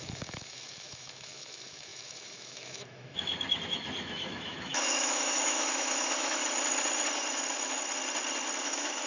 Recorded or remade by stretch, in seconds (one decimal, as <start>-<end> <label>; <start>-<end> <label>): 0.0-6.4 remade; 6.4-8.6 recorded; 8.6-9.1 remade